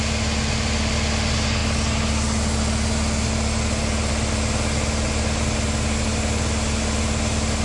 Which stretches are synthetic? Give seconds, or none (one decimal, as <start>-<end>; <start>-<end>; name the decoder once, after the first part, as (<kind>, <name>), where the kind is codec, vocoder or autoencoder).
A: none